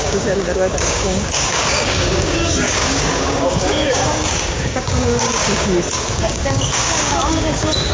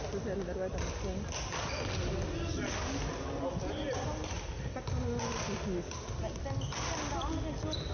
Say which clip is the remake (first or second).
first